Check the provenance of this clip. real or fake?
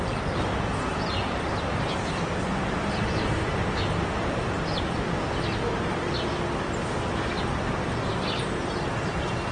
real